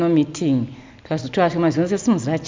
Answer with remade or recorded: recorded